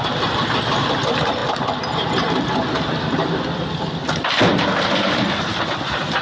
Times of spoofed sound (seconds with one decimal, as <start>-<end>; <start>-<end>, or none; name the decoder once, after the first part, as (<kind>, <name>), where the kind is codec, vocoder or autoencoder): none